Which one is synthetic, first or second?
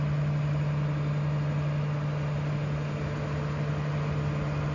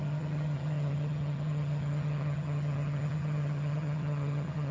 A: second